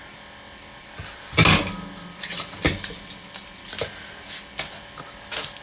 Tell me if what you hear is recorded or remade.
recorded